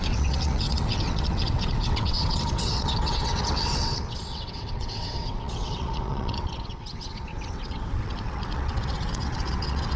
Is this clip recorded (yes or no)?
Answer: no